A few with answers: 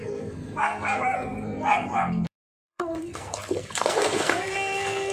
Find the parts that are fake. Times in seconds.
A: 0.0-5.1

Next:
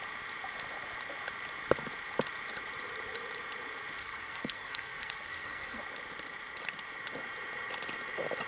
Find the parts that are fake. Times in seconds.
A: 4.0-5.8

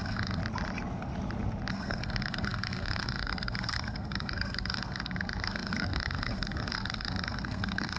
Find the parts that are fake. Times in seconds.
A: 0.0-0.4; 1.7-8.0

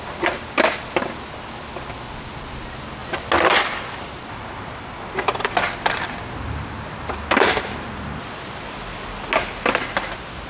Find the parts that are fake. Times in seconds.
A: none

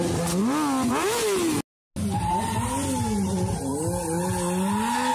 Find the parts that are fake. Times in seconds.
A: none

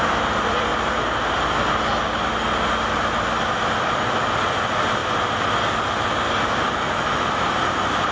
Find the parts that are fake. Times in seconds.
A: none

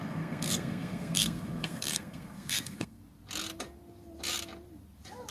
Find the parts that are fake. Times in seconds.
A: 0.0-3.0

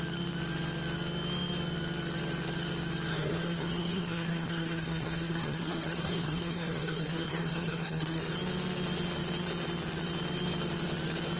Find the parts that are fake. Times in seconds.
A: 3.1-8.2